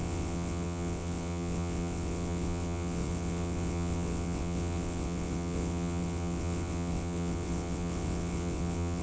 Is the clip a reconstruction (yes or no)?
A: yes